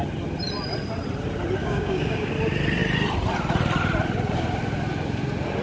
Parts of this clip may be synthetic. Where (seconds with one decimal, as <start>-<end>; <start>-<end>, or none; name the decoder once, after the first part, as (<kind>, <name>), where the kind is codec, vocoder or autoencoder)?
1.6-2.3 (codec, DAC)